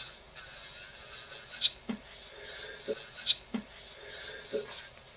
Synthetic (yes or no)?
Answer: no